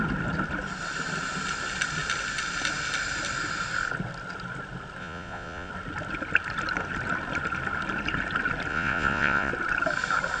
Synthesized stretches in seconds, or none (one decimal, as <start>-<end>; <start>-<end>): 5.0-5.7; 8.7-9.5